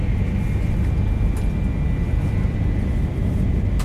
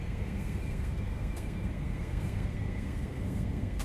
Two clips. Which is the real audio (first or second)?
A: first